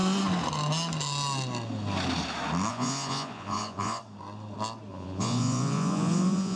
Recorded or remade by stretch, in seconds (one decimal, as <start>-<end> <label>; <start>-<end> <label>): 0.0-2.7 recorded; 2.7-4.0 remade; 4.0-4.9 recorded; 4.9-6.6 remade